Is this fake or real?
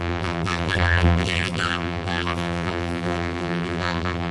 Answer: fake